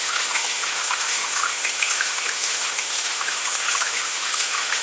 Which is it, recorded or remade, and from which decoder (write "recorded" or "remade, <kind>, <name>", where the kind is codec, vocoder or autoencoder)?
remade, autoencoder, DAC-VAE